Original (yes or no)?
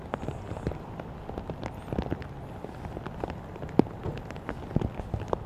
yes